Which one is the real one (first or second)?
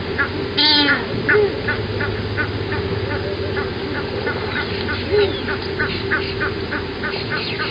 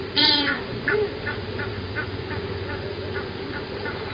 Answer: first